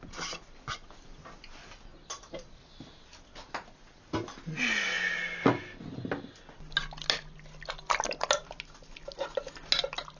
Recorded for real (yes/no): yes